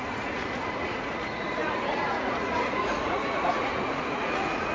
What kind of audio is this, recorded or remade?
remade